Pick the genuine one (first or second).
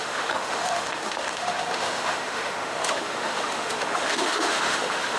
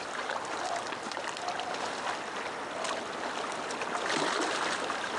second